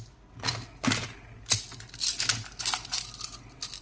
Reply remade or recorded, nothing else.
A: recorded